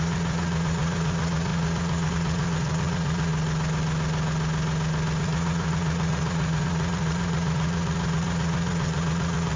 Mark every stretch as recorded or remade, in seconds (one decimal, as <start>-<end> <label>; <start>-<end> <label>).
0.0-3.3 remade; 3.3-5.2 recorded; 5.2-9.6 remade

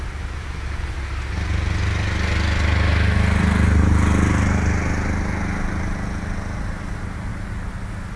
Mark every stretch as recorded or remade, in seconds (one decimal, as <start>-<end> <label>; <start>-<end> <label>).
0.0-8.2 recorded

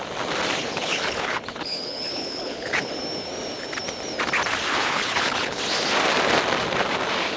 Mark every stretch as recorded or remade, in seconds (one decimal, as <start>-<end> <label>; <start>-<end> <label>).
0.0-0.6 recorded; 0.6-2.9 remade; 2.9-4.8 recorded; 4.8-5.6 remade; 5.6-7.4 recorded

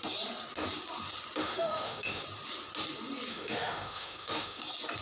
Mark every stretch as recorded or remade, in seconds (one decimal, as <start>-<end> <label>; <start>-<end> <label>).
0.0-1.4 recorded; 1.4-2.2 remade; 2.2-3.3 recorded; 3.3-4.6 remade; 4.6-5.0 recorded